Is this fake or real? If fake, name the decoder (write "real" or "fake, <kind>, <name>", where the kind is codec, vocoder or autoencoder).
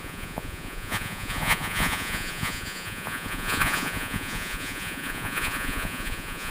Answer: fake, vocoder, Vocos